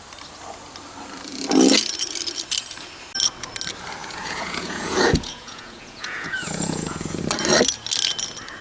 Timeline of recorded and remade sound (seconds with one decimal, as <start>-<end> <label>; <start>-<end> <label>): 0.0-4.0 recorded; 4.0-7.2 remade; 7.2-8.6 recorded